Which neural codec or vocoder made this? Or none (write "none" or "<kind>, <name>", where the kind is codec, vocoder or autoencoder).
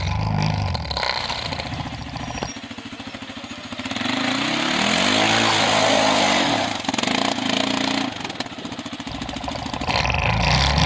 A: none